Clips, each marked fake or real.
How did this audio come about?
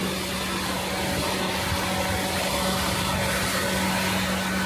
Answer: real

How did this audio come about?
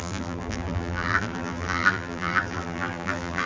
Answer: fake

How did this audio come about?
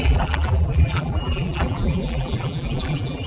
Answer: fake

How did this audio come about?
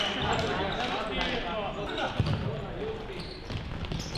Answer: real